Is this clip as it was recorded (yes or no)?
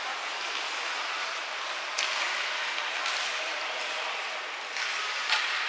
yes